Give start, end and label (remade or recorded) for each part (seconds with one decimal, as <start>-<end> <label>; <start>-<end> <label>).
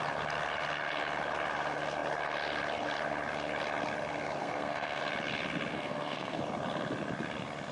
0.0-4.4 recorded; 4.4-5.0 remade; 5.0-5.7 recorded; 5.7-6.4 remade; 6.4-7.7 recorded